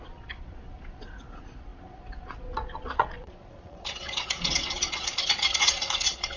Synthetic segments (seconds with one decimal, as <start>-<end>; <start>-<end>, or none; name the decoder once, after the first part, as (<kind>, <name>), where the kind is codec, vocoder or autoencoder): 0.0-6.4 (vocoder, Vocos)